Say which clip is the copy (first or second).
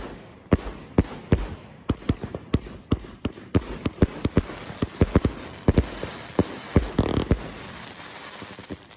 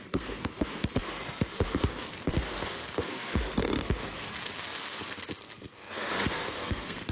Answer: second